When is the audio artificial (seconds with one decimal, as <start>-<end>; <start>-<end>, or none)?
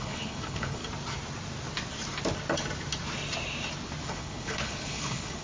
0.0-0.8; 4.0-5.4